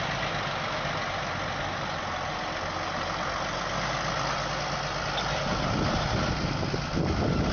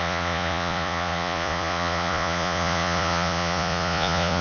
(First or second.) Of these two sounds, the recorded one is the first